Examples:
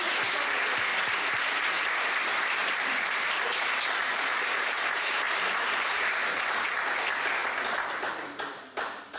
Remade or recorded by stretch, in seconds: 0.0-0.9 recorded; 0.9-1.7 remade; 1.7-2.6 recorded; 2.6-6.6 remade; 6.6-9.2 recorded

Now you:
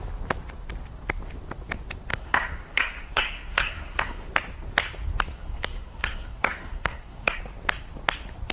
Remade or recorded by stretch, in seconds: 0.0-2.1 recorded; 2.1-4.3 remade; 4.3-5.3 recorded; 5.3-7.4 remade; 7.4-8.5 recorded

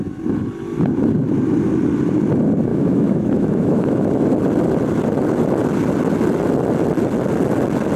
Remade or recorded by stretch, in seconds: 0.0-2.7 recorded; 2.7-4.1 remade; 4.1-8.0 recorded

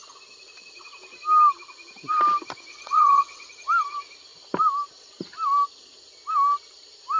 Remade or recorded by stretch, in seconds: 0.0-2.7 recorded; 2.7-3.5 remade; 3.5-7.2 recorded

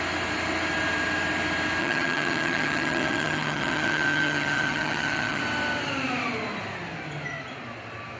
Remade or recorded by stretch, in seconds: 0.0-1.8 recorded; 1.8-5.4 remade; 5.4-8.2 recorded